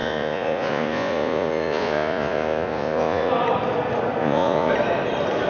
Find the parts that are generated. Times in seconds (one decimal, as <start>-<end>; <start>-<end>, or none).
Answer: 0.0-3.3; 4.2-4.7